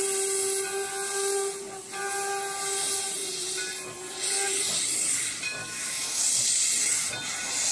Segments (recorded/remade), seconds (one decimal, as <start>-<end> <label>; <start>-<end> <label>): 0.0-5.6 recorded; 5.6-6.2 remade; 6.2-7.7 recorded